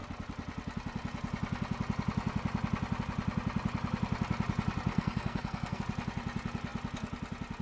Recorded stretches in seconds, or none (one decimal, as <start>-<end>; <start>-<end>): 0.0-4.9; 5.8-7.6